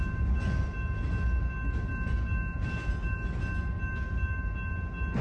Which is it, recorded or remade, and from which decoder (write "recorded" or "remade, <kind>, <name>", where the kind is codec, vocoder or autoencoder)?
recorded